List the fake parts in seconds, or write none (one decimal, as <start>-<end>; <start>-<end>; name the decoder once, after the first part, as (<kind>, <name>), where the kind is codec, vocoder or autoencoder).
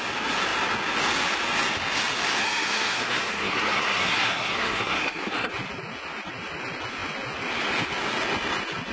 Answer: 2.4-5.5 (codec, SNAC)